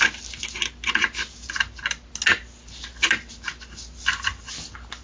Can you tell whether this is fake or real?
real